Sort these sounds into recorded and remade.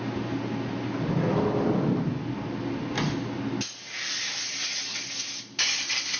recorded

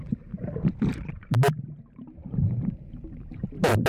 remade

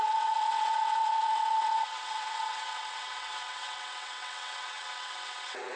remade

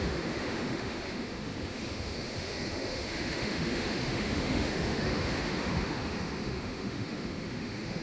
remade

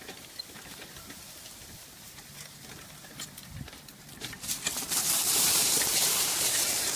remade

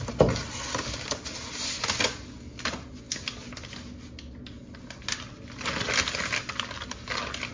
recorded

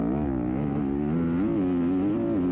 recorded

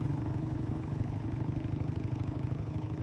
remade